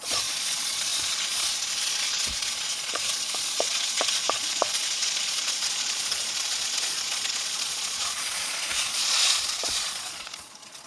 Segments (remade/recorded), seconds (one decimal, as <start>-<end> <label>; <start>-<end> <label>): 0.0-10.9 remade

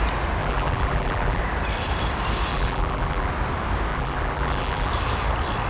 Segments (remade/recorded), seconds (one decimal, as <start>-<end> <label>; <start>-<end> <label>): 0.0-0.4 recorded; 0.4-1.4 remade; 1.4-2.5 recorded; 2.5-3.3 remade; 3.3-3.9 recorded; 3.9-4.9 remade; 4.9-5.7 recorded

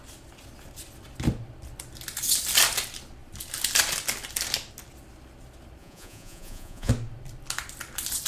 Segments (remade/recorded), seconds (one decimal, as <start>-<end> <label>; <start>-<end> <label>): 0.0-5.8 recorded; 5.8-6.9 remade; 6.9-8.3 recorded

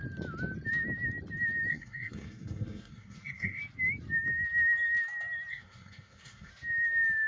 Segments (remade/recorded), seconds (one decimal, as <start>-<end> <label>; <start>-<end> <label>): 0.0-1.7 recorded; 1.7-3.6 remade; 3.6-5.5 recorded; 5.5-6.5 remade; 6.5-7.3 recorded

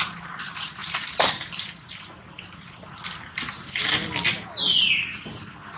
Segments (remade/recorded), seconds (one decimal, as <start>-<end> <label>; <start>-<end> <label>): 0.0-5.8 recorded

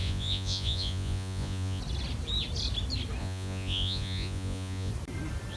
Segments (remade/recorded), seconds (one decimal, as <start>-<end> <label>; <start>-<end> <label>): 0.0-1.8 remade; 1.8-3.2 recorded; 3.2-4.9 remade; 4.9-5.6 recorded